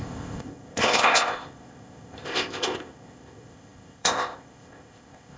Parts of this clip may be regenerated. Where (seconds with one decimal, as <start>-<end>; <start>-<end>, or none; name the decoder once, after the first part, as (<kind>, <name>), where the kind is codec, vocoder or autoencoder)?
0.0-5.4 (codec, ZipCodec)